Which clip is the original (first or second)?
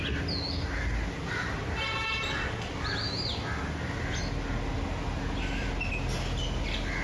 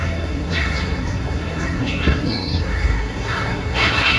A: first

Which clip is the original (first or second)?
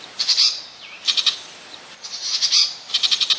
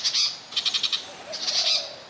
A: second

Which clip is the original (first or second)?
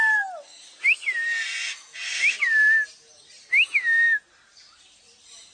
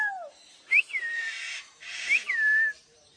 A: first